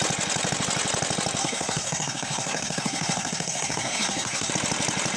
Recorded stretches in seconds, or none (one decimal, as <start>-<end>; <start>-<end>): 0.0-1.4; 4.5-5.2